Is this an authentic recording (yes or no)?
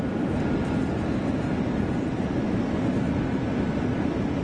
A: yes